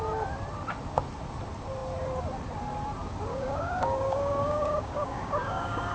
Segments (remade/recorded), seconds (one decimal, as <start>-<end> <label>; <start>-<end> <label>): 0.0-3.3 recorded; 3.3-5.9 remade

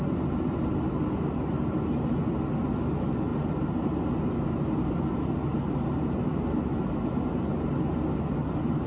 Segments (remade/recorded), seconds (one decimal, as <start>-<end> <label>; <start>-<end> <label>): 0.0-8.9 recorded

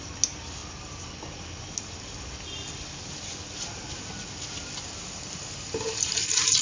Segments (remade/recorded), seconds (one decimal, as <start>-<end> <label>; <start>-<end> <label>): 0.0-6.6 recorded

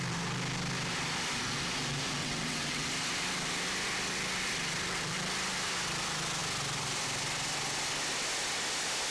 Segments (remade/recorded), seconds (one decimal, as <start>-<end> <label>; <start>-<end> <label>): 0.0-2.2 recorded; 2.2-2.8 remade; 2.8-9.1 recorded

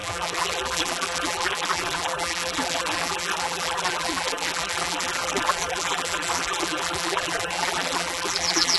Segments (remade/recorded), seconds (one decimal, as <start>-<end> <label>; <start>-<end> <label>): 0.0-8.8 remade